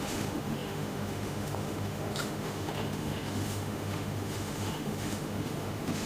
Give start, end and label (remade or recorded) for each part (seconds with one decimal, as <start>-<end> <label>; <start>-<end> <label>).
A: 0.0-6.1 remade